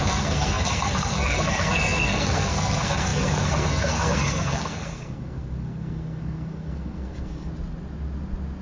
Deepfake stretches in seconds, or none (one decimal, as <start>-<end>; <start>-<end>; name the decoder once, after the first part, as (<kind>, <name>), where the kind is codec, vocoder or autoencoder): 0.0-7.5 (codec, SNAC)